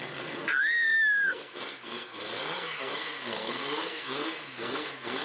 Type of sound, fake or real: fake